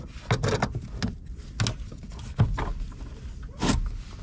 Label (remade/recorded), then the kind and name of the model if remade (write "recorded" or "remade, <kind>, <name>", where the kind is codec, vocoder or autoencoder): recorded